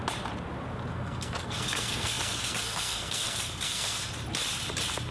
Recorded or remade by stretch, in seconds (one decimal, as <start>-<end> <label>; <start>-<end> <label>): 0.0-0.9 recorded; 0.9-4.0 remade; 4.0-5.1 recorded